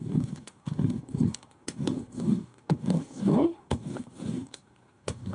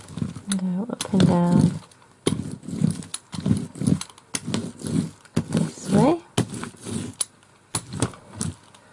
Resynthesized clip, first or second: first